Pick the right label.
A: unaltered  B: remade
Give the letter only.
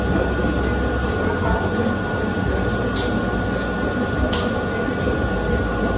A